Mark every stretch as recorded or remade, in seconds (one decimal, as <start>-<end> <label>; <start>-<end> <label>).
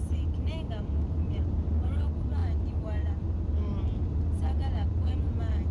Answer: 0.0-5.7 recorded